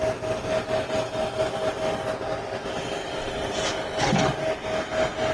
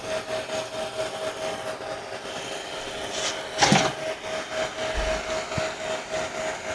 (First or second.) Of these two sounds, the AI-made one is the first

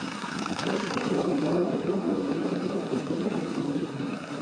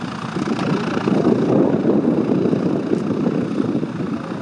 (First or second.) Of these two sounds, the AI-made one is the first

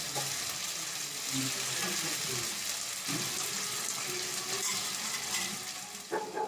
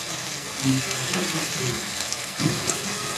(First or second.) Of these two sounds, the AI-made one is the second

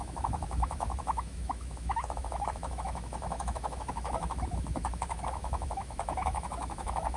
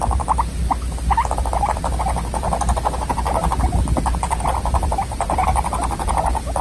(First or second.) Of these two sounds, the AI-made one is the first